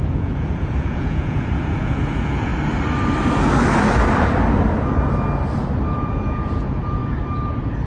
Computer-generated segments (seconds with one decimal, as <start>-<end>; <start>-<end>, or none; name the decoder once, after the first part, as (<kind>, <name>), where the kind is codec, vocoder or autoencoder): 0.0-2.5 (vocoder, Vocos); 5.9-7.0